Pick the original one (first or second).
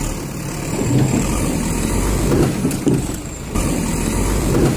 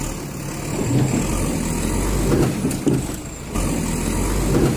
second